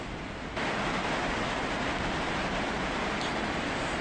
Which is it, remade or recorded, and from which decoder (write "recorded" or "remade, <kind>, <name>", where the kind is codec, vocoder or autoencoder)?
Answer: recorded